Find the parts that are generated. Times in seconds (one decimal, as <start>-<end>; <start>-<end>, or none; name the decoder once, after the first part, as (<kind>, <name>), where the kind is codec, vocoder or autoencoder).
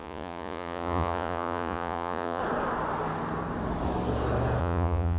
0.0-2.4 (vocoder, Vocos); 4.6-5.2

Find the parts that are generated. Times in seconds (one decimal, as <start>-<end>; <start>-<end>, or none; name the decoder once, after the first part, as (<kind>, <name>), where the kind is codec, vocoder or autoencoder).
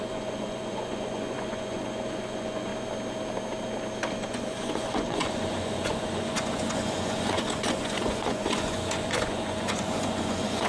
0.0-2.7 (vocoder, Vocos); 4.3-10.7